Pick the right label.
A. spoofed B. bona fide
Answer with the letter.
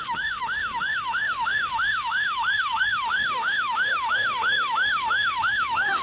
A